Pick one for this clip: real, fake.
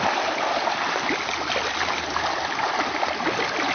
real